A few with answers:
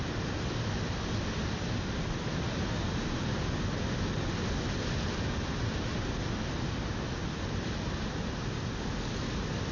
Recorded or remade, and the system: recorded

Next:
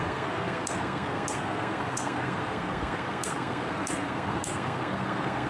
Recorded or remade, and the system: remade, codec, SNAC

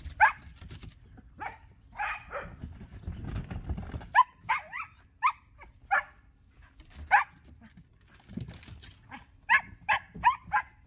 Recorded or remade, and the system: recorded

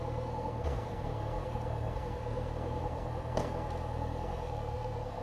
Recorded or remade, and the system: remade, codec, SNAC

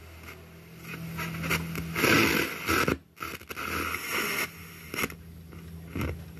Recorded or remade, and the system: recorded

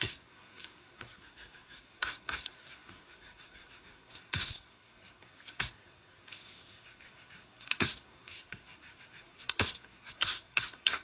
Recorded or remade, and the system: remade, codec, SNAC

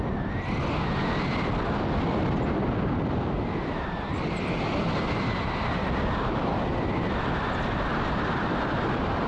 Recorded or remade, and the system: recorded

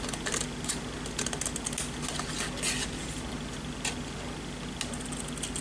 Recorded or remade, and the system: recorded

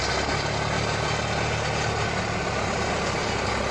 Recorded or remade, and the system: recorded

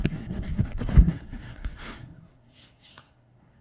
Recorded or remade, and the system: remade, codec, SNAC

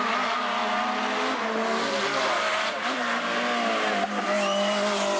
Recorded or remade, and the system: recorded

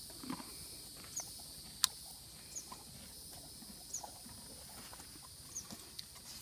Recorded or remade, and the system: recorded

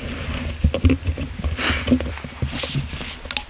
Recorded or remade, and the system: recorded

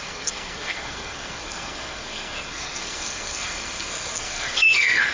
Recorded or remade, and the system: remade, codec, SNAC